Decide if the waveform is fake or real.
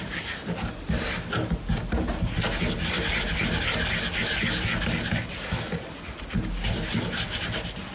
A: real